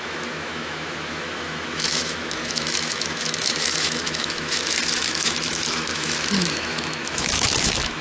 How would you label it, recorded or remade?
remade